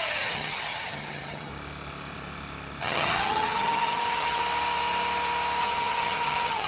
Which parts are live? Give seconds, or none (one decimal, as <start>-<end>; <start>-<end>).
1.5-2.8; 4.4-5.6